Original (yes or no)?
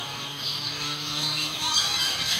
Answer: no